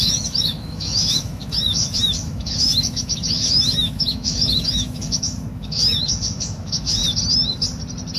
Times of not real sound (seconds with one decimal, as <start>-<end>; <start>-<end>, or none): 0.0-7.0